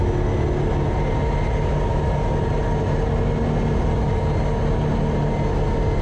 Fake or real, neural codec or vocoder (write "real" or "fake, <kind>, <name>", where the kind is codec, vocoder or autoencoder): real